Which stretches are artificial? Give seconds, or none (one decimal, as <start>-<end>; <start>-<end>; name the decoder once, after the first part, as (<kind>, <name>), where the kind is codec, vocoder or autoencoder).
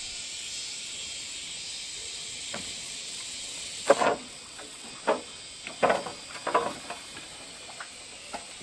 2.0-4.9 (vocoder, WaveNeXt)